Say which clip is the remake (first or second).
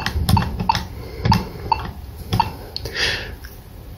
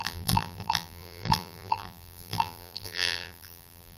second